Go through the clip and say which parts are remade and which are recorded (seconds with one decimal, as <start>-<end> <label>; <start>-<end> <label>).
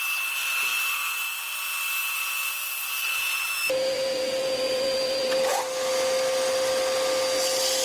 0.0-2.0 recorded; 2.0-5.6 remade; 5.6-7.8 recorded